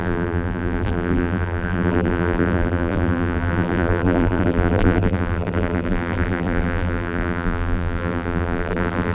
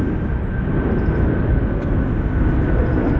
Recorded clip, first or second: second